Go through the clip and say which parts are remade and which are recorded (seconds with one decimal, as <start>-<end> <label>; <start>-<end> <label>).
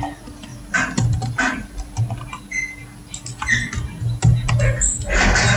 0.0-5.6 recorded